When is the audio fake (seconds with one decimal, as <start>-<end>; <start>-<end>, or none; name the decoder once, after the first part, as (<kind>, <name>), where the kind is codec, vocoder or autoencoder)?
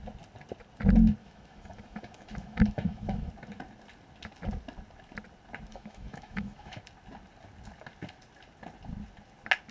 1.2-3.3 (autoencoder, DAC-VAE); 5.7-6.8